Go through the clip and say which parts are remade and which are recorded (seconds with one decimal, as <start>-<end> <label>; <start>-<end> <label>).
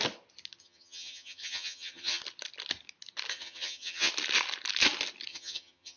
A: 0.0-0.6 recorded; 0.6-2.2 remade; 2.2-3.3 recorded; 3.3-4.1 remade; 4.1-5.3 recorded; 5.3-6.0 remade